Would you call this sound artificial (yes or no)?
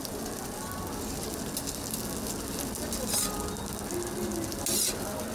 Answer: no